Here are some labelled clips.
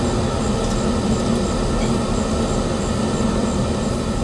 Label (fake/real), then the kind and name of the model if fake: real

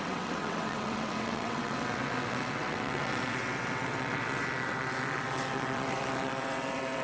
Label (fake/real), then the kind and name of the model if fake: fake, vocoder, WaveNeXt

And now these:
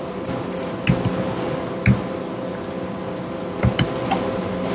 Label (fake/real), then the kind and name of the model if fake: real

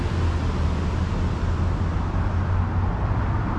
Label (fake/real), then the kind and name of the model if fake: real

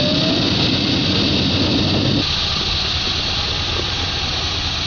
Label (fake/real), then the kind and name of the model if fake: real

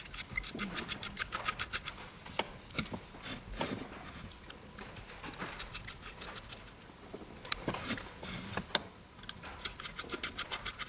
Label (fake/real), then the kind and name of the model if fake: real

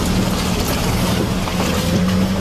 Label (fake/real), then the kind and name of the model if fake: real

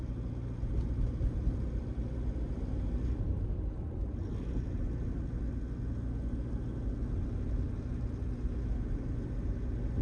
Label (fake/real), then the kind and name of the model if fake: real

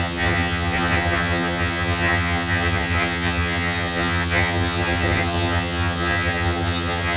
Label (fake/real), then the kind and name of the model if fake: fake, vocoder, HiFi-GAN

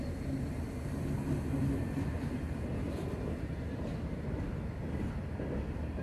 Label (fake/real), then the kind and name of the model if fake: real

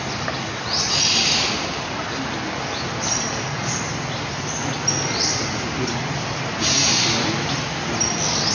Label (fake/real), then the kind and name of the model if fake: real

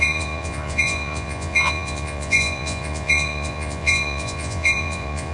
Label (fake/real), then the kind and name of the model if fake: fake, vocoder, Vocos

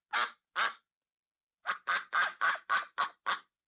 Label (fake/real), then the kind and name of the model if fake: real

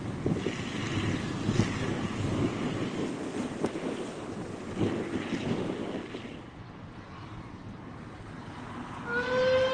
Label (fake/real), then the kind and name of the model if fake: real